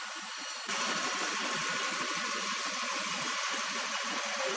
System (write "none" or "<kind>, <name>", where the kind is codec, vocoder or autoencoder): none